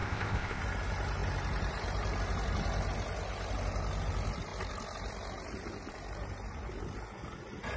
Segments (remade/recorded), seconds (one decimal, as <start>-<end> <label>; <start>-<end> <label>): 0.0-0.6 remade; 0.6-7.8 recorded